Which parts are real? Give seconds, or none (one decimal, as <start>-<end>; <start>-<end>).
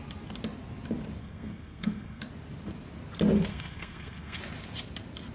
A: 0.0-1.2; 2.2-3.5; 4.4-5.3